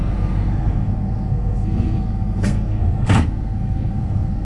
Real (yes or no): no